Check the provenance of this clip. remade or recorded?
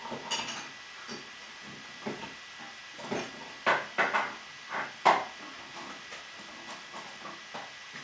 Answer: recorded